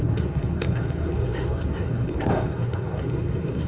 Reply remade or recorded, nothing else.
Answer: remade